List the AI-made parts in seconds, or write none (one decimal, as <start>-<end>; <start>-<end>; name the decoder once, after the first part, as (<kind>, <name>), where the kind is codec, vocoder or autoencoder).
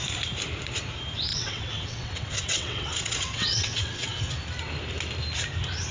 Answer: 1.3-4.2 (vocoder, WaveNeXt)